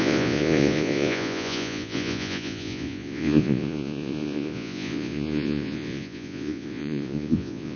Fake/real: fake